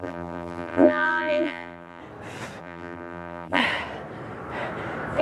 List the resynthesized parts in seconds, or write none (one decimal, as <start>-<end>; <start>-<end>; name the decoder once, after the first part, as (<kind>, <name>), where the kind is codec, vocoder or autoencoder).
0.0-2.0 (vocoder, BigVGAN v2); 2.6-3.6